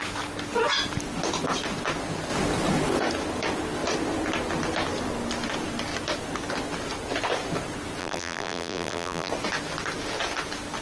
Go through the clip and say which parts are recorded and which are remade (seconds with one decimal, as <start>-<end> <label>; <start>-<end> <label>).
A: 0.0-8.0 recorded; 8.0-9.3 remade; 9.3-10.8 recorded